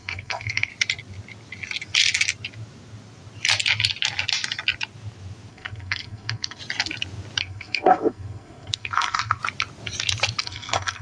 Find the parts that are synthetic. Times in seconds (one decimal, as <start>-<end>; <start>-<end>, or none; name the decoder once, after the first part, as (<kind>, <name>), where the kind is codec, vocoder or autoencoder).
0.0-0.7 (codec, SNAC); 5.5-6.6; 7.4-9.4; 10.4-11.0